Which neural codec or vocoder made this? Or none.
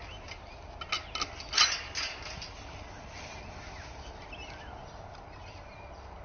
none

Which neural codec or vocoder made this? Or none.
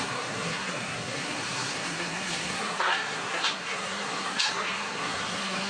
codec, SNAC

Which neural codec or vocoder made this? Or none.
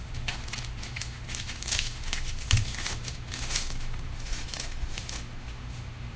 autoencoder, DAC-VAE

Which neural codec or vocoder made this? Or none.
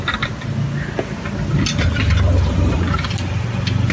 none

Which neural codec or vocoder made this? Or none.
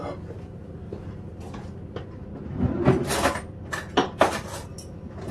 none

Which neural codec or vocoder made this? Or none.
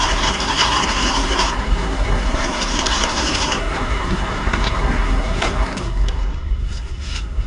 codec, SNAC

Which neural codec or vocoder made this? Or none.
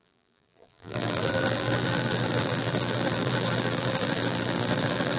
vocoder, BigVGAN v2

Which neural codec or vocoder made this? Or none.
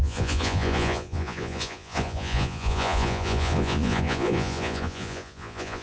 vocoder, Vocos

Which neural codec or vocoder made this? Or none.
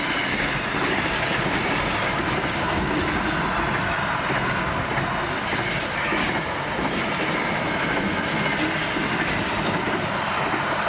none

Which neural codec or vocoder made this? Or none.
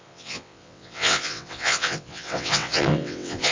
vocoder, WaveNeXt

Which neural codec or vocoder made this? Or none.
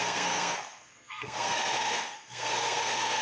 codec, SNAC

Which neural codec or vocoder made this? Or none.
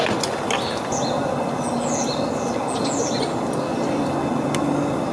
none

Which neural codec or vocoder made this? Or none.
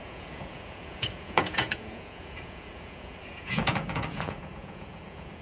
vocoder, Vocos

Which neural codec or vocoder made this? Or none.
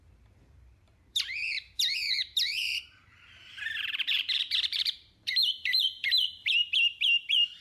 vocoder, BigVGAN v2